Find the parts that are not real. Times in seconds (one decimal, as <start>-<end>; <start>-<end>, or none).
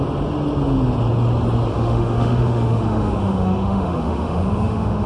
1.7-5.1